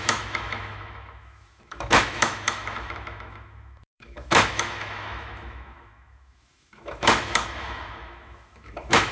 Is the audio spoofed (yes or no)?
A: yes